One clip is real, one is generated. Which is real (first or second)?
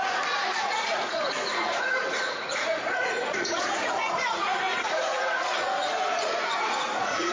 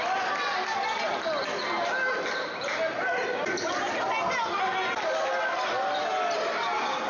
second